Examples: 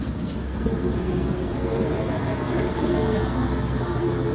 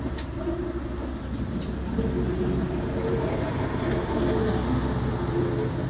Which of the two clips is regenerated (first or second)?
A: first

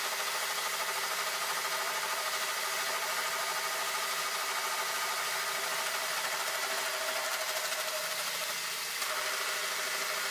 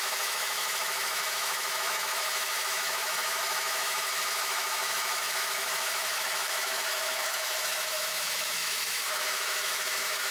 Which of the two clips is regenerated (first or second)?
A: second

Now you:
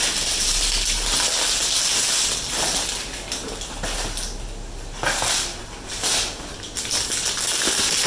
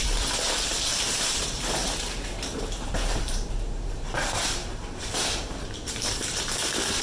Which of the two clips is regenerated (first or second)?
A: second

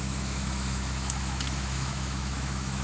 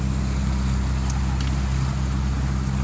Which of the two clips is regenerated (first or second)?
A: first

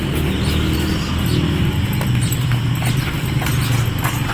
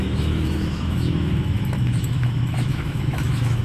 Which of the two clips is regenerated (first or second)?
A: second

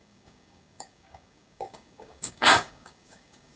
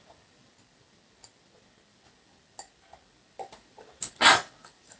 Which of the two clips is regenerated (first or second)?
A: first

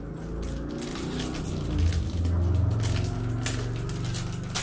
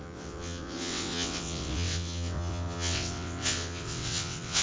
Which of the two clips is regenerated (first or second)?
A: second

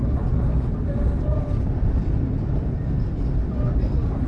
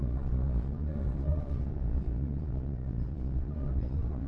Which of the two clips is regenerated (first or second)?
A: second